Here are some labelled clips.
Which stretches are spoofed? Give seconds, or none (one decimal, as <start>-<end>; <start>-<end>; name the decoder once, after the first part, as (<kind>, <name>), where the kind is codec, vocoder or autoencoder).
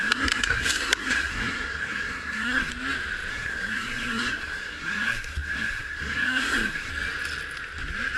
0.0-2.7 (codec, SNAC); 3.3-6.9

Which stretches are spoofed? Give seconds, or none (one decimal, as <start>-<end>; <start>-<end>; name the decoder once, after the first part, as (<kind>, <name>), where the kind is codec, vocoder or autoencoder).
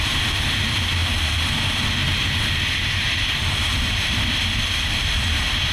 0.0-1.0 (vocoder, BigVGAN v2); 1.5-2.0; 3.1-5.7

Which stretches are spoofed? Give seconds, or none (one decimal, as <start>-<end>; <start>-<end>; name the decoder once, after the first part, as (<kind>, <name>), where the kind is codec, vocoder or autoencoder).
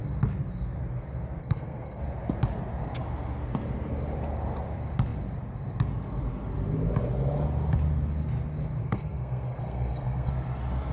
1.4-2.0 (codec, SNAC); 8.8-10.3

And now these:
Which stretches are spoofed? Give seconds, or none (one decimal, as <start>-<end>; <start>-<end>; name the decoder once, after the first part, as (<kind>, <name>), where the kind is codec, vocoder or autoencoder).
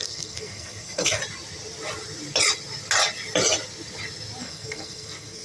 0.0-1.2 (codec, SNAC); 4.4-5.4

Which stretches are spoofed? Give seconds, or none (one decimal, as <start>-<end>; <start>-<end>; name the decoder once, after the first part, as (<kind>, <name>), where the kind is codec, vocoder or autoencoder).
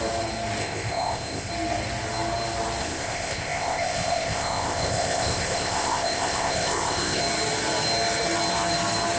0.6-1.5 (codec, ZipCodec); 2.8-7.2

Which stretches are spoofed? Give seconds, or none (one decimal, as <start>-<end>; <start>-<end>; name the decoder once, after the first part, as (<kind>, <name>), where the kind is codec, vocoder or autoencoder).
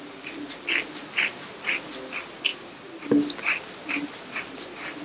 none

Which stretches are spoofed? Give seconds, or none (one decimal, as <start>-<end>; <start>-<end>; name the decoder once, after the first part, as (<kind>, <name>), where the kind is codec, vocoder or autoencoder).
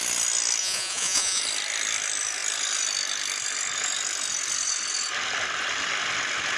0.6-1.4 (vocoder, Vocos)